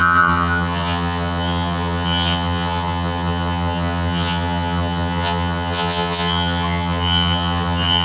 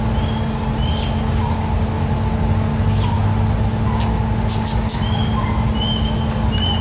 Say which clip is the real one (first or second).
second